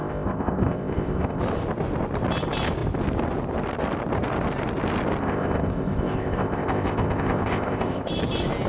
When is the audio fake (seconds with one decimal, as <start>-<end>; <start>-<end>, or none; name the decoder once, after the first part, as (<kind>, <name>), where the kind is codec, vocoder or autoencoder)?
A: 0.0-1.4 (codec, ZipCodec); 5.2-8.1